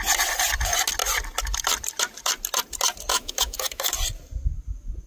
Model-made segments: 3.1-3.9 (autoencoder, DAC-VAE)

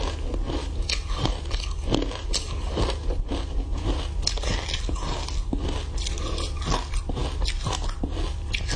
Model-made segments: none